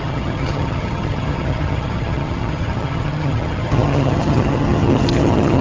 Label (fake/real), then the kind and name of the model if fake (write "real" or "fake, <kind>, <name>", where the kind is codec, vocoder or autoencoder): fake, vocoder, HiFi-GAN